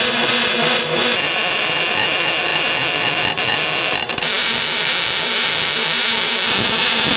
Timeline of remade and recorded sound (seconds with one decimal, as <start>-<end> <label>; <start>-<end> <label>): 0.0-7.2 recorded